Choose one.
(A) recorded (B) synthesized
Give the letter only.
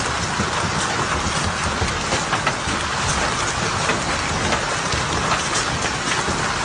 A